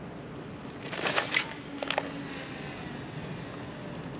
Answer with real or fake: real